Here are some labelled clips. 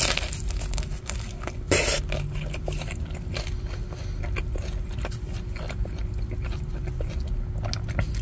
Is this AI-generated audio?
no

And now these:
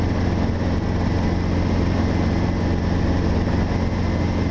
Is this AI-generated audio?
no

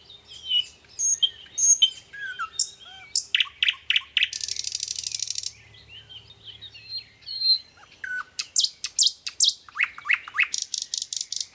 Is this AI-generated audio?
no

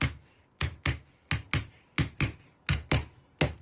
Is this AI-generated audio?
no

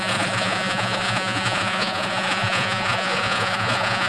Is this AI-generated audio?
yes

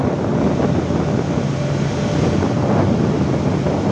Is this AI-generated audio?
no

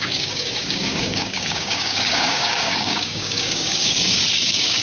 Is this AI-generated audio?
yes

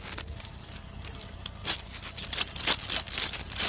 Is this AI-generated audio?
no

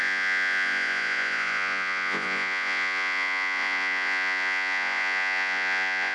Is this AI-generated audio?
yes